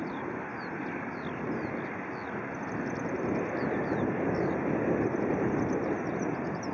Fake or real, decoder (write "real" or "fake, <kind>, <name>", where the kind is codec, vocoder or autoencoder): real